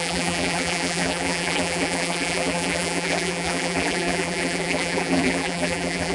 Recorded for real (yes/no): no